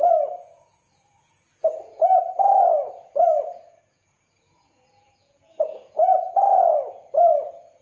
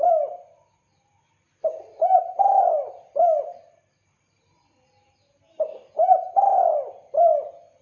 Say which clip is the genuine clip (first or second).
second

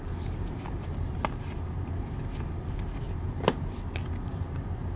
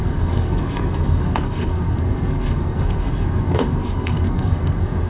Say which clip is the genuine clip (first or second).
first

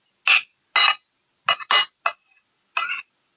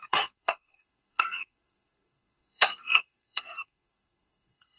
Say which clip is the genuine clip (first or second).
first